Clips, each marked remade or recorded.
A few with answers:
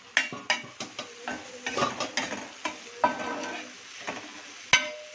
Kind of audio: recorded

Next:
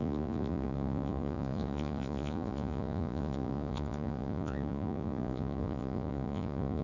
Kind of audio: remade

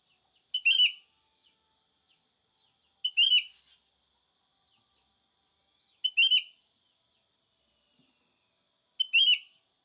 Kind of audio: recorded